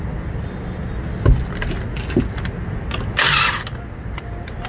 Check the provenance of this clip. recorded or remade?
recorded